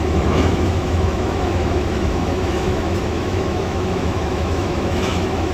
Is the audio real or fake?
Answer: fake